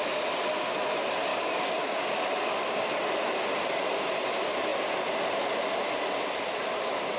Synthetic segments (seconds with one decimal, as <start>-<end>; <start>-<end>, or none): 1.3-3.0